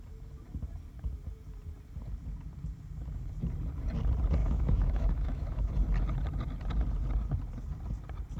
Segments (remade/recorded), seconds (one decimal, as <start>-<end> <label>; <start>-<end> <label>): 0.0-4.4 recorded; 4.4-5.7 remade; 5.7-8.4 recorded